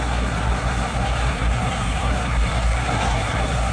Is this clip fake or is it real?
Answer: fake